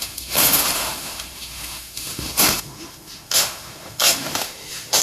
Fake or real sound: fake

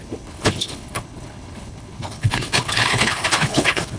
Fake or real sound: fake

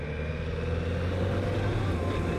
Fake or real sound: real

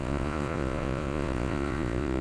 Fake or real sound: fake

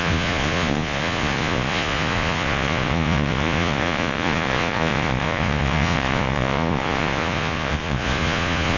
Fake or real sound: fake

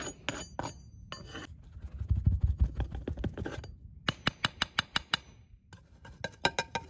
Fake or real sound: real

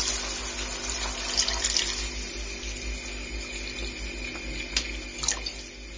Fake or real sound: real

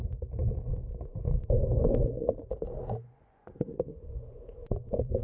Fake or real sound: fake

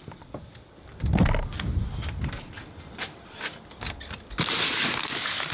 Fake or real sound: real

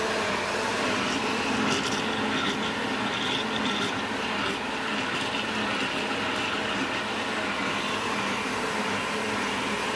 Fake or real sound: real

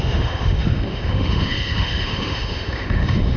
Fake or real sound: fake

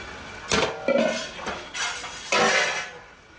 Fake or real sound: real